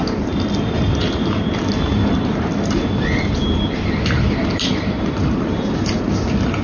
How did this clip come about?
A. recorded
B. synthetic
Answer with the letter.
A